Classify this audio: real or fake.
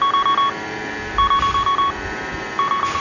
real